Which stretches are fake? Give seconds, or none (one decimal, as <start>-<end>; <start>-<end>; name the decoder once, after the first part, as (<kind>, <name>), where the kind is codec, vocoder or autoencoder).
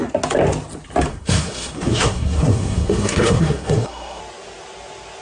1.1-4.2 (codec, SNAC)